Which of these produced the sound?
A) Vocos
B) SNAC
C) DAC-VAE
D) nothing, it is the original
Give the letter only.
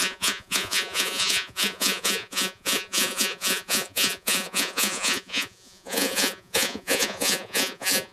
A